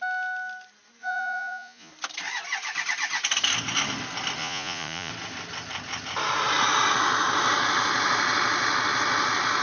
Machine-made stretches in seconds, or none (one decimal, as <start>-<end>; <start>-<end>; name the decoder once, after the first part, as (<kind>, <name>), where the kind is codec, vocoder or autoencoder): 1.0-1.9 (vocoder, Vocos); 4.4-5.1